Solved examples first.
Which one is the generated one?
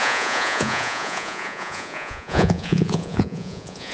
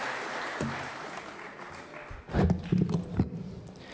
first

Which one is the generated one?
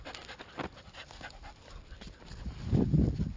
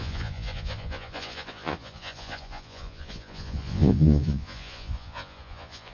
second